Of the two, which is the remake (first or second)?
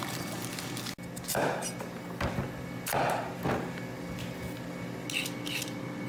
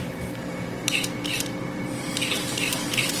second